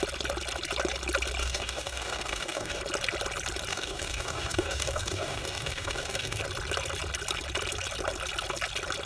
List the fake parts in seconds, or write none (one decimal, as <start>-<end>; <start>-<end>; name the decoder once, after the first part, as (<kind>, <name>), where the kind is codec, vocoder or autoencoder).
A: 1.4-2.8 (codec, DAC); 3.7-6.4